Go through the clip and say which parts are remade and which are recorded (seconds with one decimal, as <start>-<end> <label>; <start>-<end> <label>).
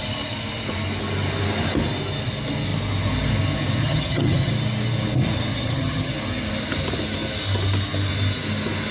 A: 0.0-3.8 recorded; 3.8-4.5 remade; 4.5-5.5 recorded; 5.5-6.1 remade; 6.1-8.9 recorded